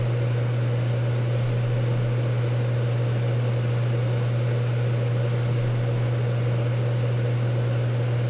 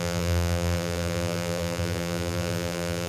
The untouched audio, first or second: first